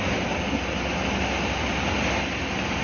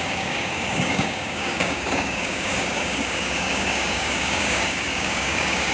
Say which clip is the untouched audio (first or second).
first